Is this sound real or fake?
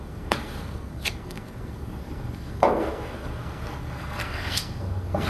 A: fake